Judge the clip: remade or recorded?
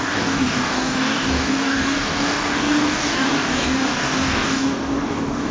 remade